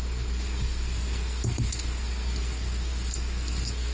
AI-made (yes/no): yes